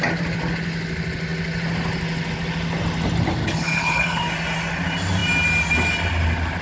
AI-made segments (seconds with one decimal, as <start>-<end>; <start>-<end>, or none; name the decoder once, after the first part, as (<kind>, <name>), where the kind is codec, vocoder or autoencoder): 3.4-4.2 (codec, HILCodec)